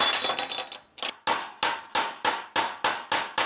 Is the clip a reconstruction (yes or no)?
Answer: no